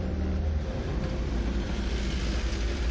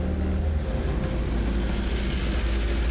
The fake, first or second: first